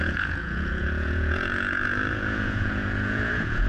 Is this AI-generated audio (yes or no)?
yes